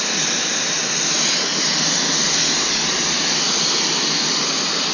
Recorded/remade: recorded